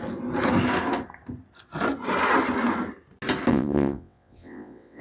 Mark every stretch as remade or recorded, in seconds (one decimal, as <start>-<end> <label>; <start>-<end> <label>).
0.0-3.5 recorded; 3.5-5.0 remade